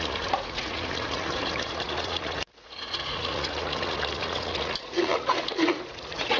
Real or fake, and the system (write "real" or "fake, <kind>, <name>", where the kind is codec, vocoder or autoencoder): fake, vocoder, Vocos